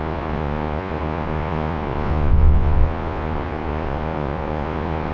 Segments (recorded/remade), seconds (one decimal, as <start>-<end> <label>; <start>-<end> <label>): 0.0-5.1 remade